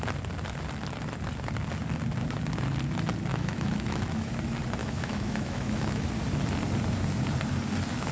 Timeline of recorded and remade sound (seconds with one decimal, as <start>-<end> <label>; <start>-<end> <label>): 0.0-3.3 recorded; 3.3-4.3 remade; 4.3-4.8 recorded; 4.8-6.1 remade; 6.1-8.1 recorded